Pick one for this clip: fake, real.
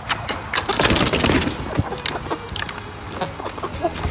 real